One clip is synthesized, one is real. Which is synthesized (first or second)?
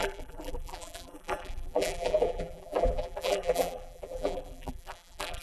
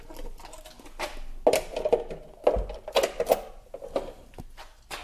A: first